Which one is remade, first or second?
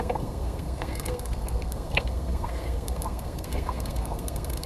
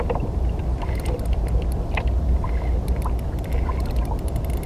first